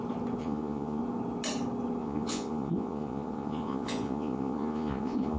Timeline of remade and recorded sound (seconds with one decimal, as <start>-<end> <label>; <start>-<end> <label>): 0.0-0.4 recorded; 0.4-1.0 remade; 1.0-2.0 recorded; 2.0-5.4 remade